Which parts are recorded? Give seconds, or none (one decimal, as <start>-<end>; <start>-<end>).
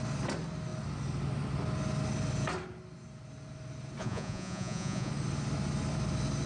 0.0-4.0; 5.1-6.5